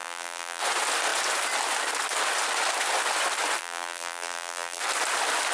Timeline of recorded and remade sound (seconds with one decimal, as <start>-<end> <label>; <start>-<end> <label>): 0.0-0.6 remade; 0.6-3.6 recorded; 3.6-4.8 remade; 4.8-5.5 recorded